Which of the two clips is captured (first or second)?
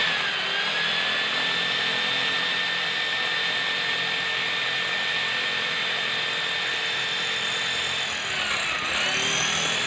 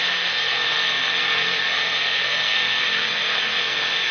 first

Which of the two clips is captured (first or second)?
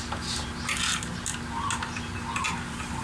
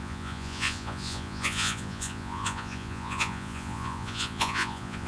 first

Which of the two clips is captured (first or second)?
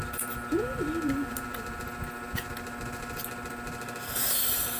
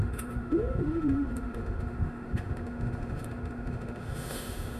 first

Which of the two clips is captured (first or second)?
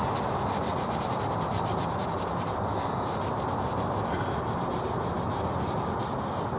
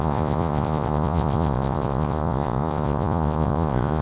first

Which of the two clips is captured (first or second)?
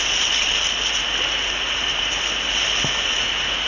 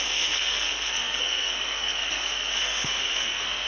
first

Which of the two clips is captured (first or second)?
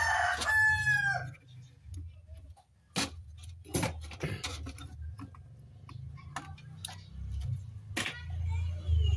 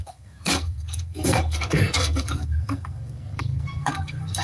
first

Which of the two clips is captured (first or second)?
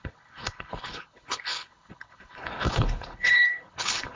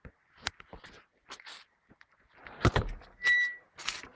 second